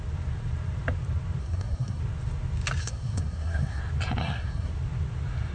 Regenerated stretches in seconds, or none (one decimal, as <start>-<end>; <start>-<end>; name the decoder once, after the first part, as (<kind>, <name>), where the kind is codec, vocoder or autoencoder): 1.4-2.0 (codec, SNAC); 2.8-3.8; 4.2-4.7